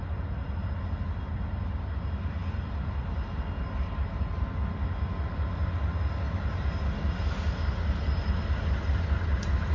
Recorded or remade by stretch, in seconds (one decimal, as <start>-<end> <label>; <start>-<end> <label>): 0.0-9.7 recorded